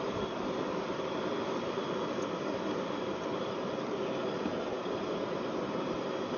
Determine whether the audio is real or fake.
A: real